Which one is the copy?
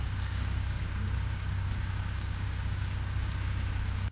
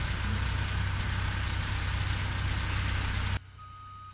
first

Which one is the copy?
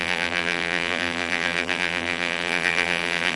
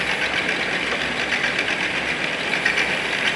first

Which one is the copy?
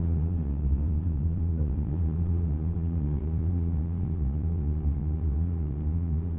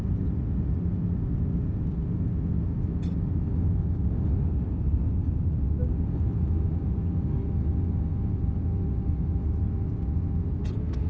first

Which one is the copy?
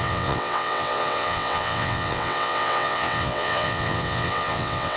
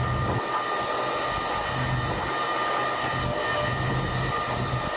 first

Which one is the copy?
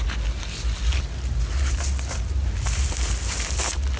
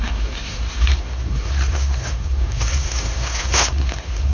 second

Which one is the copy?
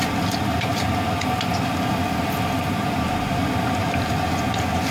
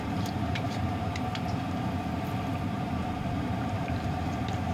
second